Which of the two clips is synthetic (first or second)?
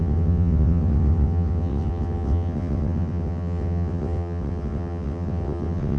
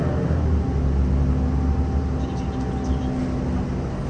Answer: first